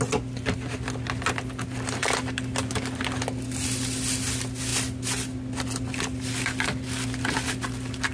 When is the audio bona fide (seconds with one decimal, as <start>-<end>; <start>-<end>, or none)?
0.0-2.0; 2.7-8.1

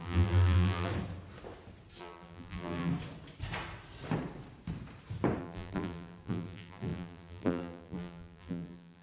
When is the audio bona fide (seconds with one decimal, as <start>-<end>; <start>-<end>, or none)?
0.9-2.0; 2.9-5.4

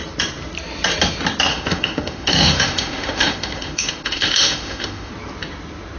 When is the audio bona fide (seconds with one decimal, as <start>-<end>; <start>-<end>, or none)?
0.0-1.5; 5.1-6.0

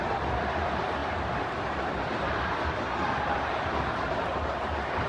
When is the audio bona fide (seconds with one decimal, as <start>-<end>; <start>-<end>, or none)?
1.0-3.7

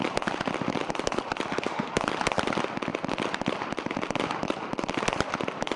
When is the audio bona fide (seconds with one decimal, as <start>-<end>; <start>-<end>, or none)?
0.0-1.5; 2.0-5.8

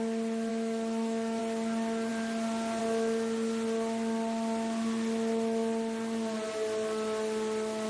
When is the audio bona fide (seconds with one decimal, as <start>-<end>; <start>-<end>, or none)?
0.0-0.5; 1.4-7.9